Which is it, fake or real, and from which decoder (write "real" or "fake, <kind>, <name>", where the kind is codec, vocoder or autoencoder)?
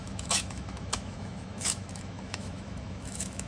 fake, autoencoder, DAC-VAE